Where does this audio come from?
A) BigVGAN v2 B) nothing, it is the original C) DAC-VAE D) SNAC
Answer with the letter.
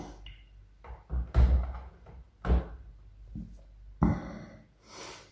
B